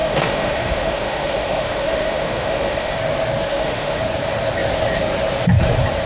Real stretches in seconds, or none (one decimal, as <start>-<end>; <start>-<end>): 2.9-3.5; 4.0-6.1